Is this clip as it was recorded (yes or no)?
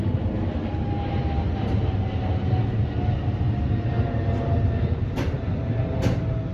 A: yes